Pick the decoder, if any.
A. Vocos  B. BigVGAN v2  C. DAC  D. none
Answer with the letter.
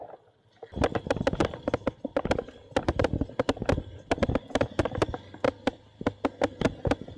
D